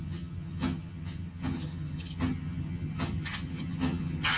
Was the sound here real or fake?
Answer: fake